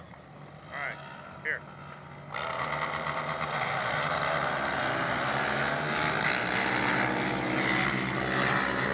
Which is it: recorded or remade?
recorded